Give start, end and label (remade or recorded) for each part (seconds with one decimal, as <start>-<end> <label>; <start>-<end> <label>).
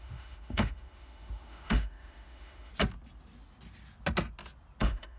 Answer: 0.0-2.7 remade; 2.7-4.8 recorded; 4.8-5.2 remade